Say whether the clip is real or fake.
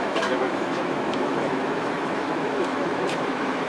fake